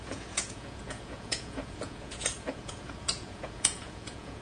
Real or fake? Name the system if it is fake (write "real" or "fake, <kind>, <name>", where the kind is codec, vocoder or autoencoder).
fake, vocoder, Vocos